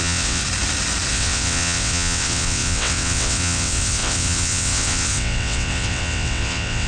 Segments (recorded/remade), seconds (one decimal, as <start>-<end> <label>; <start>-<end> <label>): 0.0-0.4 remade; 0.4-1.1 recorded; 1.1-6.9 remade

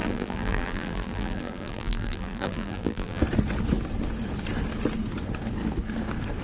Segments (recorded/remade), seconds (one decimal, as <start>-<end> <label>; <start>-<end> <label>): 0.0-3.2 remade; 3.2-6.4 recorded

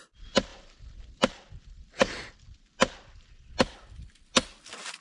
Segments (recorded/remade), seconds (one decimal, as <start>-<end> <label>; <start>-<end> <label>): 0.0-0.5 recorded; 0.5-3.5 remade; 3.5-5.0 recorded